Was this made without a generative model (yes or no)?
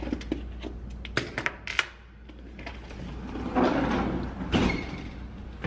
yes